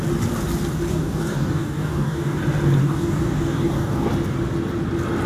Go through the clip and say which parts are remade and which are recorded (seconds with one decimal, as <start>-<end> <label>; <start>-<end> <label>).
0.0-0.9 recorded; 0.9-2.4 remade; 2.4-2.8 recorded; 2.8-4.1 remade; 4.1-5.3 recorded